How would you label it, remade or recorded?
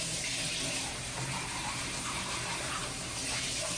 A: remade